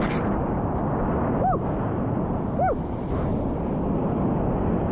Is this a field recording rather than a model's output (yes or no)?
yes